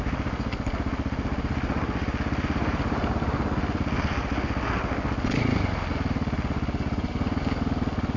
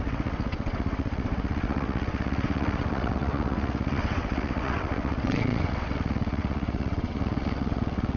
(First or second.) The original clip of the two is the first